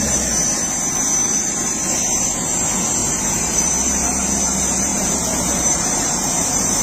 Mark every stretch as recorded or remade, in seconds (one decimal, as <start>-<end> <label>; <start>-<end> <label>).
0.0-3.0 recorded; 3.0-3.7 remade; 3.7-4.9 recorded; 4.9-6.8 remade